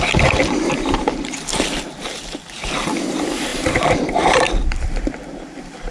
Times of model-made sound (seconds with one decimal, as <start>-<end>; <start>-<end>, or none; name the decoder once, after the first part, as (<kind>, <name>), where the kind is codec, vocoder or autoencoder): 0.0-5.9 (vocoder, BigVGAN v2)

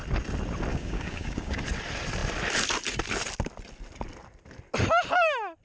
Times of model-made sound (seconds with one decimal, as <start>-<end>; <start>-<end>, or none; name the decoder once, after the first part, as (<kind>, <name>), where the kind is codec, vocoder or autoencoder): 0.7-1.6 (codec, DAC)

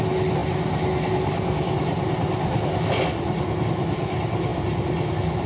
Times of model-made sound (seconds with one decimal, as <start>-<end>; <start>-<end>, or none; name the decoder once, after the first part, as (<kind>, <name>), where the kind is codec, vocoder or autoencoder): none

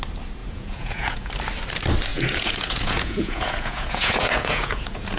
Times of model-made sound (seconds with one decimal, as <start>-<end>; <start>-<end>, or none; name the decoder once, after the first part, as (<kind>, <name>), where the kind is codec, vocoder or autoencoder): 0.4-1.3 (vocoder, Vocos); 2.1-5.2

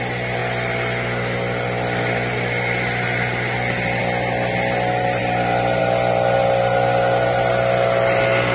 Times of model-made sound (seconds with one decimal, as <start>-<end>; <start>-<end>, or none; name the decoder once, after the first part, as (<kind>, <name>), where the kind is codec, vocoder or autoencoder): none

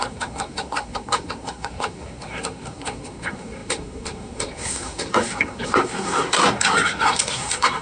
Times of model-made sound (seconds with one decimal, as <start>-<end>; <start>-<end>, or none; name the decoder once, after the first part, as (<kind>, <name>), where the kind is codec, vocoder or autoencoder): 0.0-7.8 (codec, SNAC)

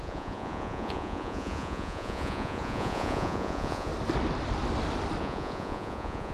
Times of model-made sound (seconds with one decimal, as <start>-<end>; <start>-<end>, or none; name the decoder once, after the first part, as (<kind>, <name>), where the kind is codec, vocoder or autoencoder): 0.0-3.9 (vocoder, Vocos); 5.2-6.3

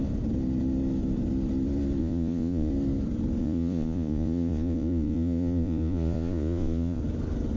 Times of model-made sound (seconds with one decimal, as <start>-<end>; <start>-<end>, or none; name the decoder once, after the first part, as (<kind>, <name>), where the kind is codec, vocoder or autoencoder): 2.0-2.7 (vocoder, Vocos); 3.4-7.0